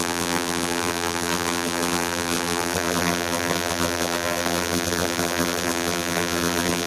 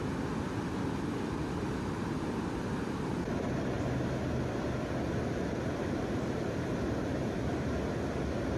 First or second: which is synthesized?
first